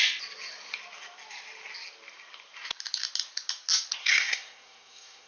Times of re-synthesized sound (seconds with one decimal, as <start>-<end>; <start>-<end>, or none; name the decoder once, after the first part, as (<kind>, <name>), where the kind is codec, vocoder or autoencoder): 4.0-5.3 (codec, SNAC)